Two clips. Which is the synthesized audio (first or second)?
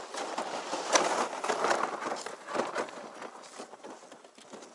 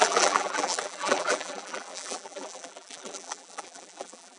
second